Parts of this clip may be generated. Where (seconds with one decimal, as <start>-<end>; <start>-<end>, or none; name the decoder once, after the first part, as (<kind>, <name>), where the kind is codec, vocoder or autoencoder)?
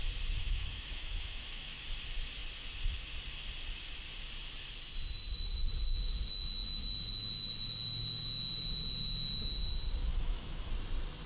0.4-1.8 (autoencoder, DAC-VAE); 10.1-10.7